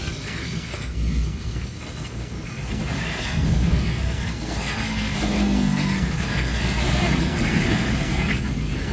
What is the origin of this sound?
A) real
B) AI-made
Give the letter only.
B